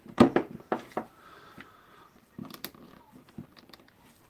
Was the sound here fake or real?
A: fake